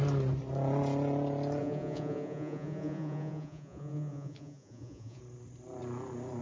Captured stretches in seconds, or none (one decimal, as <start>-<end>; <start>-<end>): 0.0-1.6; 5.2-6.4